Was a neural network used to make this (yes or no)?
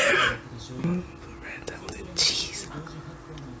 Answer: no